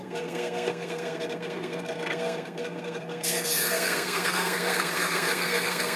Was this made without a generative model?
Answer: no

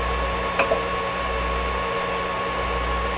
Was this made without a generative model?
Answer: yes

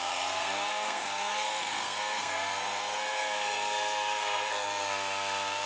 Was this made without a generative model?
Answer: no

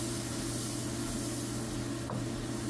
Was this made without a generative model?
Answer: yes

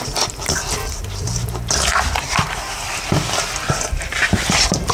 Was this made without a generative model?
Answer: no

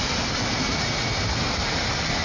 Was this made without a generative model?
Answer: yes